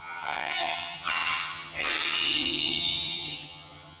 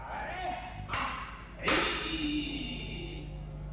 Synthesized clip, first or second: first